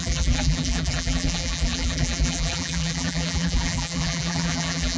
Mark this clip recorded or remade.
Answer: remade